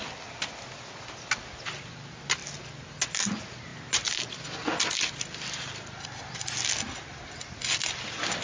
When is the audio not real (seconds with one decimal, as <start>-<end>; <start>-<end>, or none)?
none